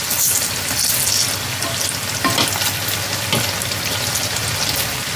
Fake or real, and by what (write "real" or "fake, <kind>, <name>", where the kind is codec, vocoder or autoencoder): real